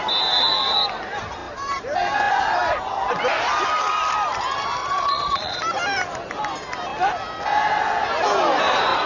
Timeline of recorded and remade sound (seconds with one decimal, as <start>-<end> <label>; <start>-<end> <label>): 0.0-4.8 recorded; 4.8-5.6 remade; 5.6-9.1 recorded